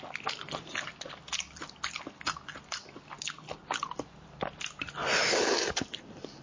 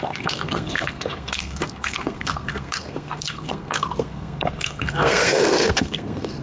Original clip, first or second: first